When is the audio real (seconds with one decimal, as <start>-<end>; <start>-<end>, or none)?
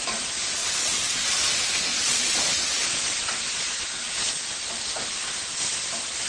0.0-0.6; 1.5-1.9; 4.4-6.3